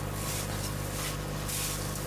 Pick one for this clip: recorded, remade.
recorded